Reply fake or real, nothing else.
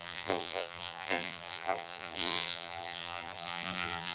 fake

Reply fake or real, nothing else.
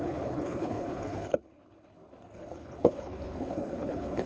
fake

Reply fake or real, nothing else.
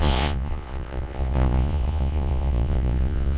fake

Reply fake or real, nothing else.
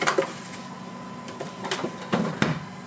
real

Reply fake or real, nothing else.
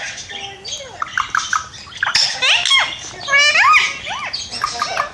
real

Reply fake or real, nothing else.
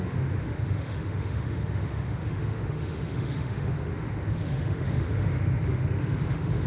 fake